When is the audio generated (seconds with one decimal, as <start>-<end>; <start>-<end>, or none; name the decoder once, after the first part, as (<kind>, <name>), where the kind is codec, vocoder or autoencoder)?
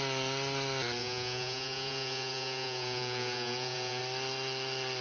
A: 1.0-4.0 (vocoder, Vocos)